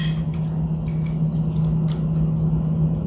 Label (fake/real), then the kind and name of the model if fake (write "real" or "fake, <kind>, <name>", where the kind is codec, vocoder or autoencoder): real